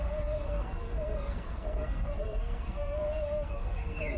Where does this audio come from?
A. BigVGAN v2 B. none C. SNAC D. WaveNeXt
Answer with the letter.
C